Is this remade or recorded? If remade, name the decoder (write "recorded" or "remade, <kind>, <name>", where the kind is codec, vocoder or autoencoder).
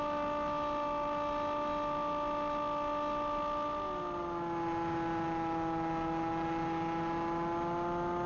recorded